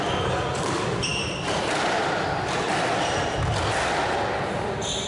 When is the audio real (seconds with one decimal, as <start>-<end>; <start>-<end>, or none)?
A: 0.0-5.1